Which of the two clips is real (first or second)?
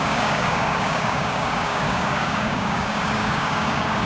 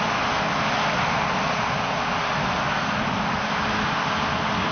second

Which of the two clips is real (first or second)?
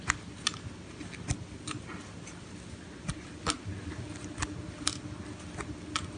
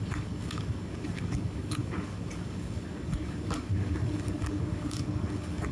first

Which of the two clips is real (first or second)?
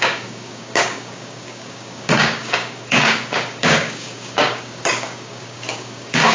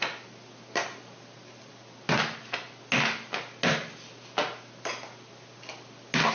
second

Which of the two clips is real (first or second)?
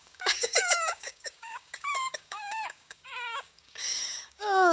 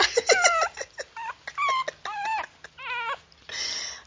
second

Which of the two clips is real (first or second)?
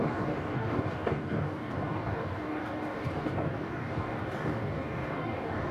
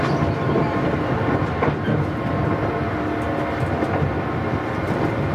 second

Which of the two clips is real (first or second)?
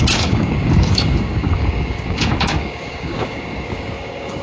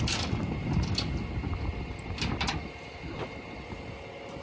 second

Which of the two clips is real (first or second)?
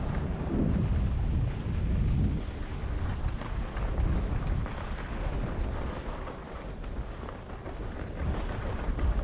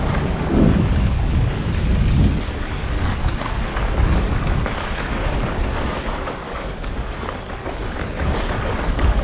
first